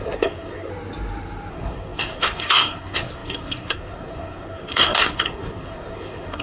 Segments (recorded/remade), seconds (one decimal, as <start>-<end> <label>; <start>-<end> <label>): 0.0-0.7 remade; 0.7-1.5 recorded; 1.5-6.4 remade